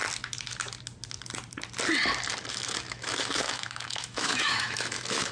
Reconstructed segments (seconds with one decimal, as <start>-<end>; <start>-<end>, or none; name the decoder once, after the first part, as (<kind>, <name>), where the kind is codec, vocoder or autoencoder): 2.5-5.3 (autoencoder, DAC-VAE)